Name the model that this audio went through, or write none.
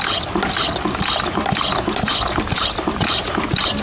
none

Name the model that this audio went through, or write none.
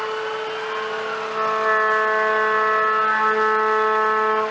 none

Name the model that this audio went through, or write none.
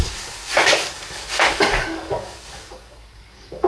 codec, DAC